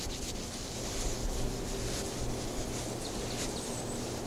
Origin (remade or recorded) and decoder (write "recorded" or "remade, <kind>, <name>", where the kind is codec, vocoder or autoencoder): recorded